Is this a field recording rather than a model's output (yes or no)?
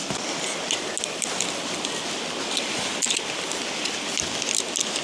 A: yes